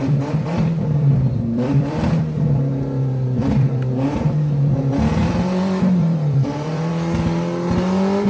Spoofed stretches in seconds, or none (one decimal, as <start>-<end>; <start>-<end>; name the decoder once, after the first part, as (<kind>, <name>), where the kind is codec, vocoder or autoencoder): 0.0-4.8 (vocoder, BigVGAN v2); 5.2-6.9